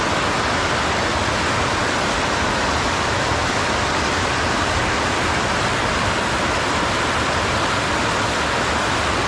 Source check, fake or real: real